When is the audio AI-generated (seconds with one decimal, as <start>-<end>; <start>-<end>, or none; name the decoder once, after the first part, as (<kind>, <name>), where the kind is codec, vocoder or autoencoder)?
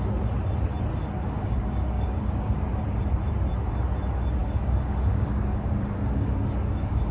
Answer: 1.0-2.8 (codec, DAC); 4.4-7.1